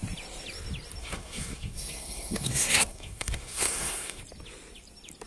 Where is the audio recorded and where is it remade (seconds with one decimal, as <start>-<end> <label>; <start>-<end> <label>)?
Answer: 0.0-1.0 recorded; 1.0-4.2 remade; 4.2-5.3 recorded